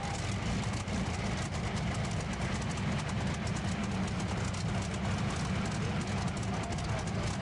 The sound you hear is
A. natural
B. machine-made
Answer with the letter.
A